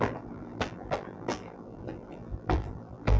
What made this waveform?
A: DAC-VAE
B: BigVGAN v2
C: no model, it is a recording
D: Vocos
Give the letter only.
B